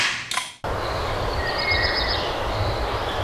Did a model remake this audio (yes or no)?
no